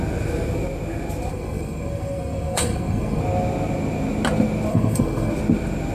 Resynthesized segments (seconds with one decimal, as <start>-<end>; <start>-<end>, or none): 1.3-3.2; 4.7-5.3